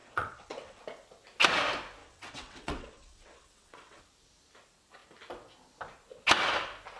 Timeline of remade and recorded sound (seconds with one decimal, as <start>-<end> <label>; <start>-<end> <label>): 0.0-0.8 remade; 0.8-2.0 recorded; 2.0-4.0 remade; 4.0-7.0 recorded